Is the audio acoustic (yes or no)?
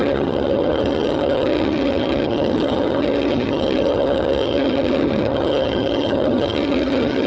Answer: no